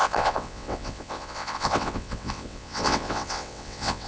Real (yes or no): no